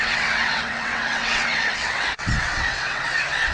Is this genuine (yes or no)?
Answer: no